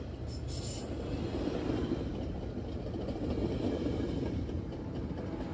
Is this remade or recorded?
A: recorded